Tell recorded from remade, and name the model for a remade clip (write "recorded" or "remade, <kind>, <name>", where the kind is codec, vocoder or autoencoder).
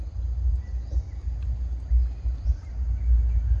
recorded